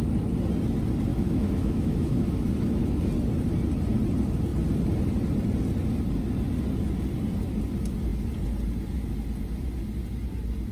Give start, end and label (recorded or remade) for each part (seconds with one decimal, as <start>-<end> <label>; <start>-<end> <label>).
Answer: 0.0-1.1 recorded; 1.1-3.1 remade; 3.1-10.7 recorded